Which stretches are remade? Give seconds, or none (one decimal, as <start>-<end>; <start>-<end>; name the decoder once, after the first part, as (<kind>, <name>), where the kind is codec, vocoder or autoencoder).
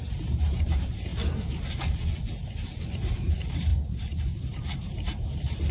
0.0-1.1 (vocoder, BigVGAN v2); 2.8-5.7